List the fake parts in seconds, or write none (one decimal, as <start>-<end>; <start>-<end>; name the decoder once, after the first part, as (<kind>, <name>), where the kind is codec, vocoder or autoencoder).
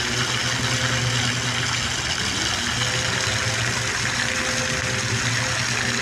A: none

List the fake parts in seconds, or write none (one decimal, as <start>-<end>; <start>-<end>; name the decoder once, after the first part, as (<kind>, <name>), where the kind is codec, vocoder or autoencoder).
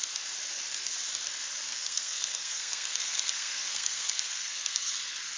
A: 1.7-4.9 (codec, SNAC)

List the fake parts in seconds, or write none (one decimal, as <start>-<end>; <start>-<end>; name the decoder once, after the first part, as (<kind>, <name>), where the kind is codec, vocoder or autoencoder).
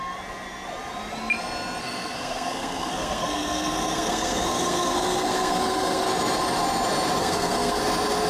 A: 1.8-6.0 (codec, SNAC); 7.2-7.8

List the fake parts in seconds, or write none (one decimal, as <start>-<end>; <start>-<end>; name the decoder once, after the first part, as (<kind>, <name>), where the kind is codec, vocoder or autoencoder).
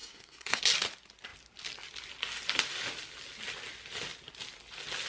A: 0.0-0.6 (codec, SNAC)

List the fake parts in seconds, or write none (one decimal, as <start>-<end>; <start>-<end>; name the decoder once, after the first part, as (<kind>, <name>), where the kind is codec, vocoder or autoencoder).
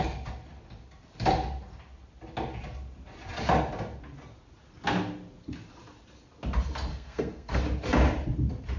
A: 6.9-7.6 (codec, SNAC)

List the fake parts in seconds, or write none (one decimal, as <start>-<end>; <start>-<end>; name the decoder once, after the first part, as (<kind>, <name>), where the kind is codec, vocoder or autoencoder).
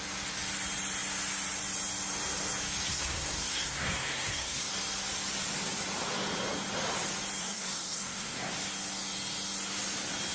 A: 2.9-4.7 (codec, SNAC); 7.4-8.5